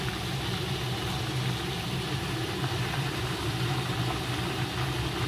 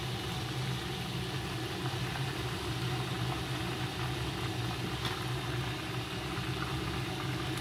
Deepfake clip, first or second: first